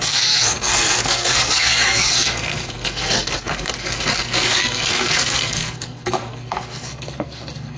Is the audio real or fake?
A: fake